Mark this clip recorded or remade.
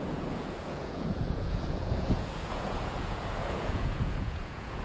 remade